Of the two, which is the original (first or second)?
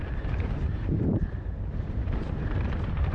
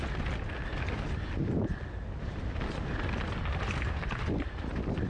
second